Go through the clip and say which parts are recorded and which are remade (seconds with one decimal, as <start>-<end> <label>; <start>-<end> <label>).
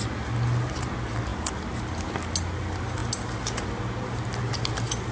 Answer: 0.0-5.1 recorded